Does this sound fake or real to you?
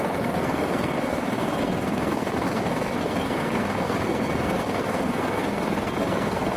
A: fake